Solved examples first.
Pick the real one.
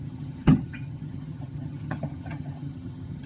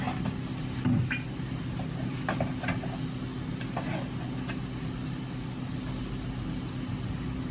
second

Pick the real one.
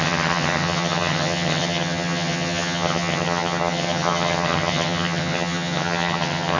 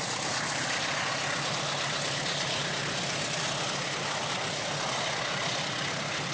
second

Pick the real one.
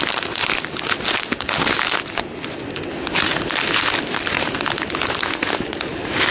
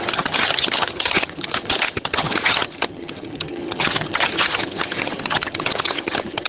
first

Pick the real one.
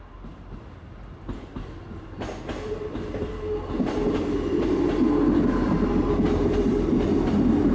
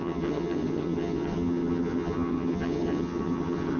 first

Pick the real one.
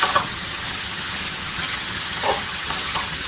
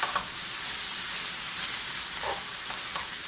second